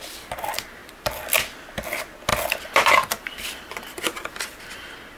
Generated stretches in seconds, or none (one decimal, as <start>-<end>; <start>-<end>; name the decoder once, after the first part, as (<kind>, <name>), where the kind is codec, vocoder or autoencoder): 0.8-1.6 (vocoder, BigVGAN v2); 2.3-5.2